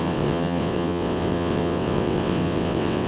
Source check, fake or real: fake